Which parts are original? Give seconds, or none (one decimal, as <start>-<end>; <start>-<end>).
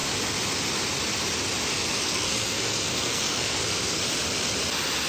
0.0-1.7; 4.0-5.1